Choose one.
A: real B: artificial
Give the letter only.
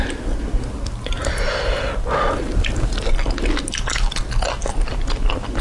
A